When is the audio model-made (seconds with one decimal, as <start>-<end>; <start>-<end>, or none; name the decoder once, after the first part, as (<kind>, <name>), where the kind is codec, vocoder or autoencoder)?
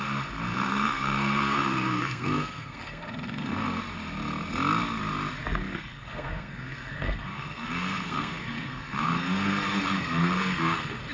0.5-3.8 (codec, SNAC); 5.7-11.1